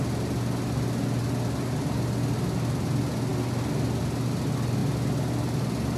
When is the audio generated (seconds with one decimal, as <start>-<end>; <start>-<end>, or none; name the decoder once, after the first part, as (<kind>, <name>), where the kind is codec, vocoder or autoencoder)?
none